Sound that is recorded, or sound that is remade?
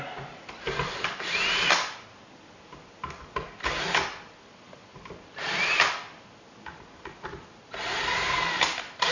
recorded